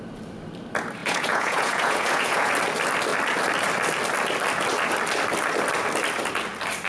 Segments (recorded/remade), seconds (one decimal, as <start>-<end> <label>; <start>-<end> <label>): 0.0-1.0 recorded; 1.0-2.5 remade; 2.5-6.9 recorded

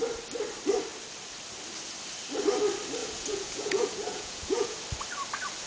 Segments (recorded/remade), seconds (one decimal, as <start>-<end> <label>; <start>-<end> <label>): 0.0-3.0 recorded; 3.0-4.8 remade; 4.8-5.7 recorded

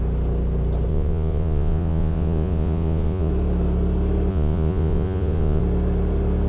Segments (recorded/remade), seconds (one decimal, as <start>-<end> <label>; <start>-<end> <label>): 0.0-0.9 recorded; 0.9-3.3 remade; 3.3-4.3 recorded; 4.3-5.6 remade; 5.6-6.5 recorded